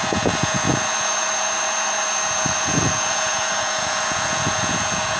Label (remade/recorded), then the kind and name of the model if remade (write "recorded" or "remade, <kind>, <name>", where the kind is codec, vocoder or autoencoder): remade, vocoder, Vocos